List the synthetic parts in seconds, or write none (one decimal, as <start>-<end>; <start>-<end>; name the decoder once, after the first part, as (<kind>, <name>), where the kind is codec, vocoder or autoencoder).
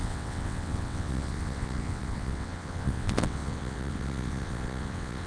0.0-5.3 (vocoder, WaveNeXt)